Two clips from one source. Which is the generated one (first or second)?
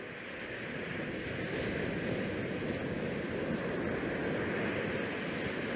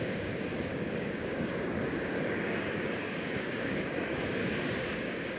second